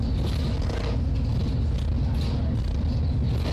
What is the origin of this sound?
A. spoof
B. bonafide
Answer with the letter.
B